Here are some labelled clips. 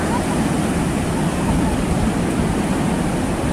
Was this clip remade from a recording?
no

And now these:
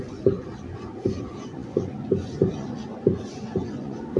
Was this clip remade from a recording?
yes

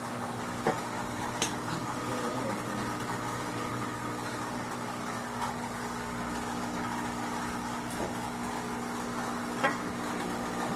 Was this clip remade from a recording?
yes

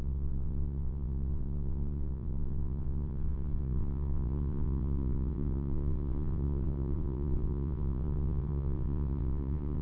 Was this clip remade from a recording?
yes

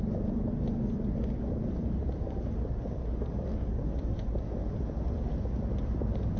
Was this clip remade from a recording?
no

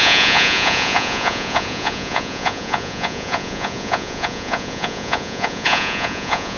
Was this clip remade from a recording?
yes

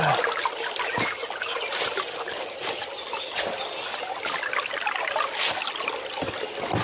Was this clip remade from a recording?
no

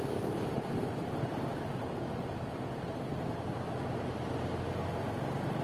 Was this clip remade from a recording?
no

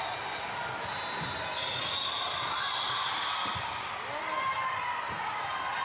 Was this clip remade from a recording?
no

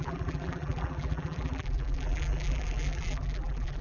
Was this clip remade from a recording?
yes